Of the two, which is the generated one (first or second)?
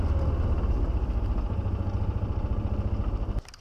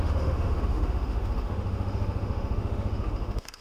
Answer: second